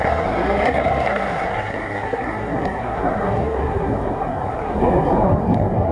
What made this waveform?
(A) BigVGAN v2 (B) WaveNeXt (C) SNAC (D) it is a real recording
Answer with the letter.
C